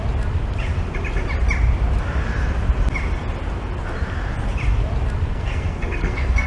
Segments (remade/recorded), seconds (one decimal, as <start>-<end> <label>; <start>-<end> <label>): 0.0-5.3 recorded; 5.3-6.5 remade